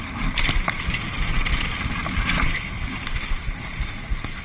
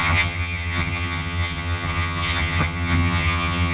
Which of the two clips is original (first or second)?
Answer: first